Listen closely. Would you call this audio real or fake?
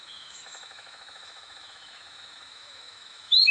fake